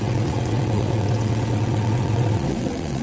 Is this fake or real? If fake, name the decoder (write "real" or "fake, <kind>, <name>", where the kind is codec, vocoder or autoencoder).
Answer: fake, vocoder, WaveNeXt